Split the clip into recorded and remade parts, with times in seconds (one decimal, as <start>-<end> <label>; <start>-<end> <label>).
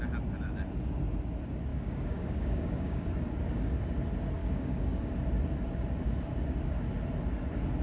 0.0-1.7 recorded; 1.7-3.9 remade; 3.9-4.4 recorded; 4.4-5.0 remade; 5.0-7.8 recorded